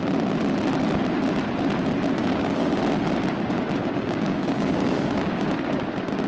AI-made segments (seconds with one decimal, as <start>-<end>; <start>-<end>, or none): 2.2-2.8; 3.8-5.5